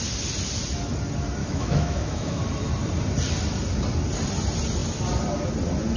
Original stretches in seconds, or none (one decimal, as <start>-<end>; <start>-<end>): 0.0-1.4; 2.4-6.0